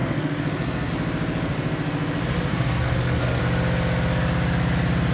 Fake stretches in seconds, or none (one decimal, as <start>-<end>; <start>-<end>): 0.0-0.9; 2.5-3.4